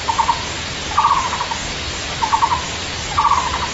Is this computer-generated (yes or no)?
no